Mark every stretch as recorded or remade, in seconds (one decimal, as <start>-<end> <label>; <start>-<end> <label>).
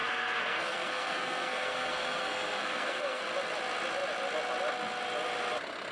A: 0.0-3.2 remade; 3.2-5.9 recorded